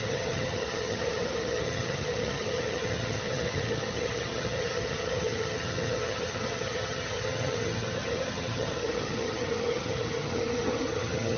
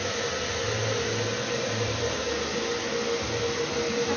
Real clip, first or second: second